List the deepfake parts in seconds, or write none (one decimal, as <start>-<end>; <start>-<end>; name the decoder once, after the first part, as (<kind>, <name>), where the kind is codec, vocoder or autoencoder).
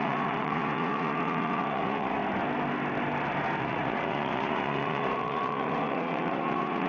0.0-2.2 (vocoder, Vocos); 3.6-6.9